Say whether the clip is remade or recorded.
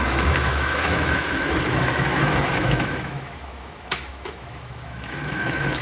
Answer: remade